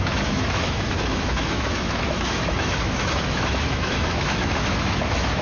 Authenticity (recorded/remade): remade